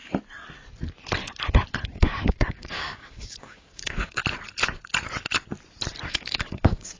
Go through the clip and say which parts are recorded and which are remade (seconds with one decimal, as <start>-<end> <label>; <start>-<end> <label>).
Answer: 0.0-1.8 recorded; 1.8-4.2 remade; 4.2-6.1 recorded; 6.1-7.0 remade